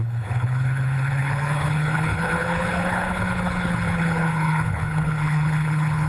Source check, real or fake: fake